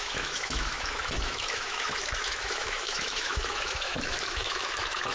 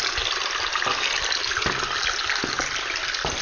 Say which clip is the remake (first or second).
first